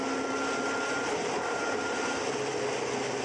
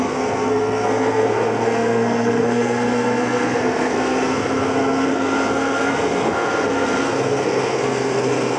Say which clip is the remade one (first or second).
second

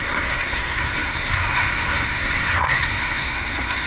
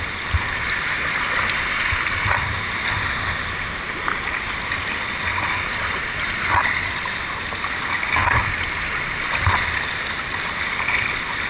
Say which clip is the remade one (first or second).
first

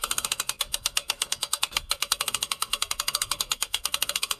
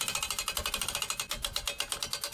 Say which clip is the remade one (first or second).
first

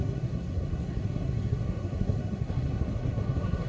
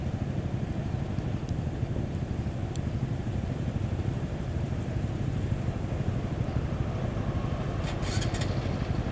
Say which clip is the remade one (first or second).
first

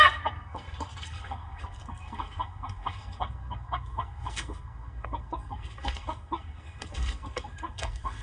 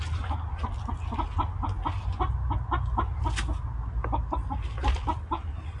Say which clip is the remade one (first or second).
first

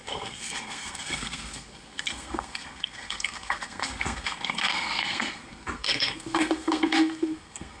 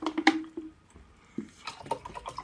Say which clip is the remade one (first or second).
first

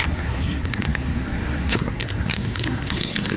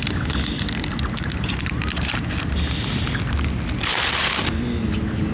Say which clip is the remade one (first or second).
first